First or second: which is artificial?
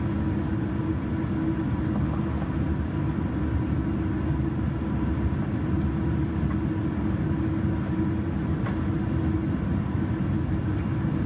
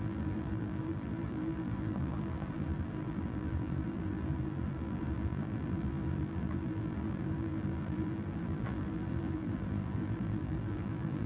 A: second